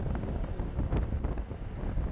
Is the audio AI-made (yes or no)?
no